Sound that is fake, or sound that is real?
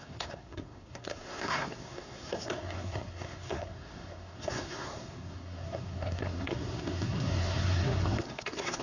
fake